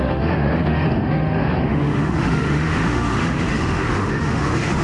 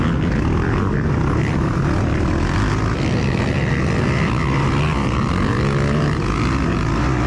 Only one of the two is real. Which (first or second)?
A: second